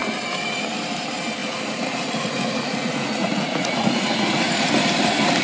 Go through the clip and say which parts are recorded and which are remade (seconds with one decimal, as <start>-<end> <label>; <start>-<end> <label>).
0.0-1.4 recorded; 1.4-4.6 remade; 4.6-5.4 recorded